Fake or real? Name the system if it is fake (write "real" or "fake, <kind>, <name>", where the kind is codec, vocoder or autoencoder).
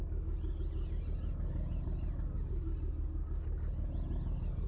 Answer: real